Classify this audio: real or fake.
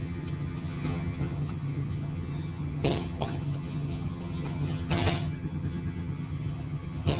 fake